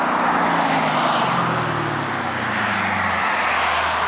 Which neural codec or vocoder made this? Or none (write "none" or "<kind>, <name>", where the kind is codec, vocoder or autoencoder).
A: none